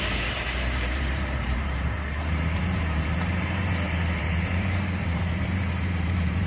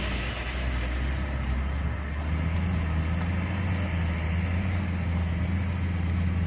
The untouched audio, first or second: second